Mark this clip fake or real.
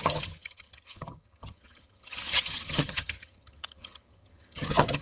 fake